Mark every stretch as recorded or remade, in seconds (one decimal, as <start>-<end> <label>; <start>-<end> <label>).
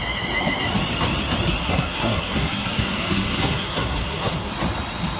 0.0-1.6 recorded; 1.6-4.5 remade; 4.5-5.2 recorded